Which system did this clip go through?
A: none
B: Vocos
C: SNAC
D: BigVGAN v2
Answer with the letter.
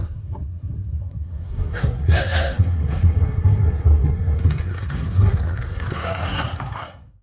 C